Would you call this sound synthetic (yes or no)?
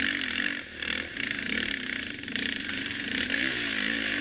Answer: yes